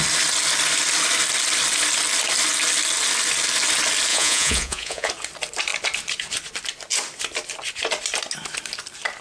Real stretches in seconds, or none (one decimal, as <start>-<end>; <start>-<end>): 0.0-4.1; 5.1-9.2

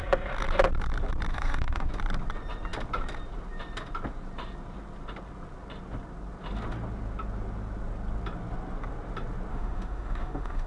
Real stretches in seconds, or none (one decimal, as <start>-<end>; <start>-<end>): 0.0-1.3; 1.9-9.5

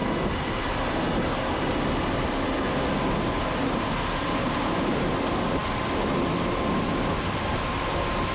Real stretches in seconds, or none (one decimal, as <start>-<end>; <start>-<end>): 0.0-8.3

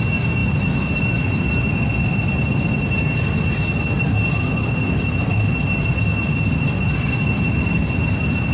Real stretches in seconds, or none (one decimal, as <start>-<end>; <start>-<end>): 0.0-8.5

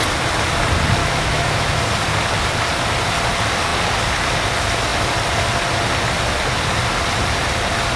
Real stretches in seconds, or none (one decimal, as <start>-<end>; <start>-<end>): 0.0-1.0; 1.8-8.0